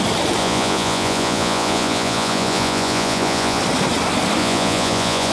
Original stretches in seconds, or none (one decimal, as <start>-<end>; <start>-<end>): 0.0-0.4; 3.6-4.4